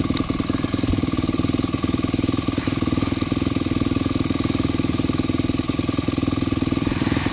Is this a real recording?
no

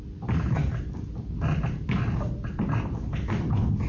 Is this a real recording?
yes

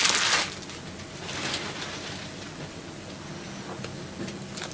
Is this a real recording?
yes